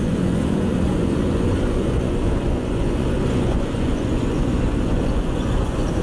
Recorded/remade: remade